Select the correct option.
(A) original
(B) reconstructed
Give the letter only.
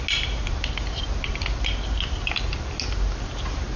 A